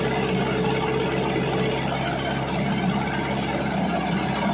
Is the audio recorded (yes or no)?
yes